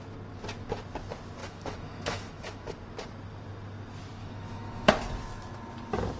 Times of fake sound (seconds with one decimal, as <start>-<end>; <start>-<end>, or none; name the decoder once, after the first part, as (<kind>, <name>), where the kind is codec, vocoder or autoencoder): 1.4-2.7 (autoencoder, DAC-VAE); 4.2-4.9